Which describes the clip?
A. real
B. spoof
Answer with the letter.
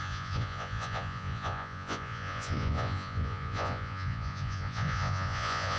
B